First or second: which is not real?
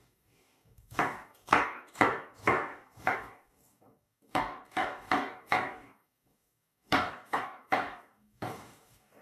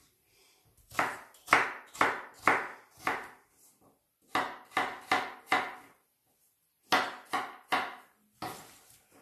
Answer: first